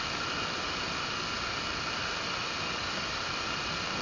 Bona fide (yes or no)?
yes